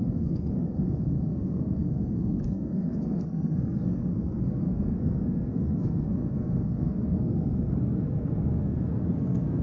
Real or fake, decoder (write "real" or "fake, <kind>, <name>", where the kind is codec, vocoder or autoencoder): fake, codec, SNAC